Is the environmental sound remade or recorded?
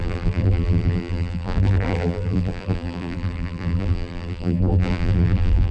remade